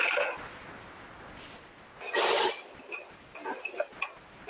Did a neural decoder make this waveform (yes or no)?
no